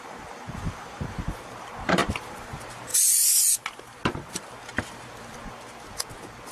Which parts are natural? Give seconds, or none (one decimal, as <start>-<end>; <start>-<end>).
2.9-4.3